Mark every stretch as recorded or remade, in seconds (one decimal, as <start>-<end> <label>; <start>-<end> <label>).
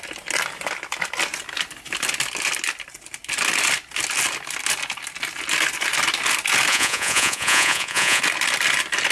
0.0-6.7 recorded; 6.7-8.2 remade; 8.2-9.1 recorded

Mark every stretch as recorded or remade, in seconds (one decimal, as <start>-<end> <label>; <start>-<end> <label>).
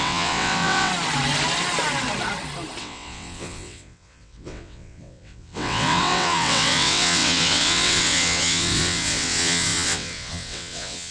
0.0-0.9 remade; 0.9-2.8 recorded; 2.8-11.1 remade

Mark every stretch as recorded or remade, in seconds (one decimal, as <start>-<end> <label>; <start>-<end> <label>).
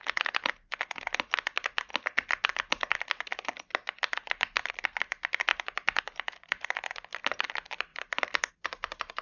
0.0-7.9 recorded; 7.9-8.5 remade; 8.5-9.2 recorded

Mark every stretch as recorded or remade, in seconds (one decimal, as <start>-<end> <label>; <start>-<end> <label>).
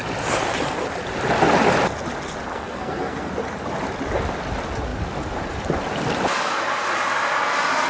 0.0-2.5 recorded; 2.5-3.3 remade; 3.3-7.9 recorded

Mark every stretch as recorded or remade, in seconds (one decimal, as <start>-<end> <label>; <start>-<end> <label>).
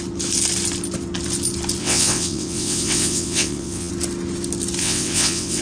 0.0-1.8 recorded; 1.8-3.9 remade; 3.9-4.8 recorded; 4.8-5.6 remade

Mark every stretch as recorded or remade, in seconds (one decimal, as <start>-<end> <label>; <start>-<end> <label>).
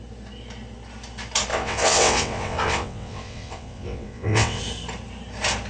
0.0-1.5 recorded; 1.5-4.6 remade; 4.6-5.7 recorded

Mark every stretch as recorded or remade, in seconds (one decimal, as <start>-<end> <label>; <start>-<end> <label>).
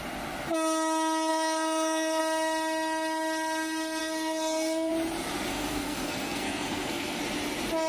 0.0-1.3 recorded; 1.3-2.2 remade; 2.2-4.0 recorded; 4.0-4.9 remade; 4.9-5.5 recorded; 5.5-7.2 remade; 7.2-7.9 recorded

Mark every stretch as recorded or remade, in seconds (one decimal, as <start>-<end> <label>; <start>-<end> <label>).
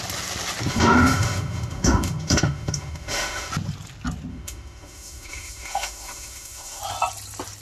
0.0-0.7 recorded; 0.7-3.5 remade; 3.5-4.3 recorded; 4.3-6.8 remade; 6.8-7.6 recorded